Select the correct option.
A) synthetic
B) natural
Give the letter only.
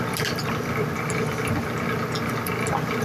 B